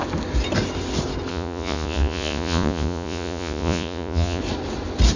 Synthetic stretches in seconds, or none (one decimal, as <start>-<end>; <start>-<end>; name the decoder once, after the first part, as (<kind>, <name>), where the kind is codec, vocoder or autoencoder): 1.3-4.4 (vocoder, Vocos)